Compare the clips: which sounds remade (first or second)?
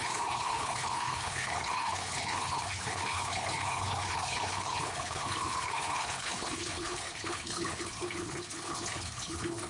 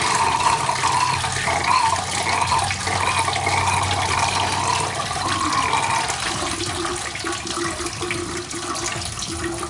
first